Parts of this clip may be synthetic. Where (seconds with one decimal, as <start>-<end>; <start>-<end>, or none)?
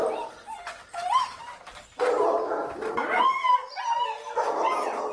0.0-0.6; 2.6-3.2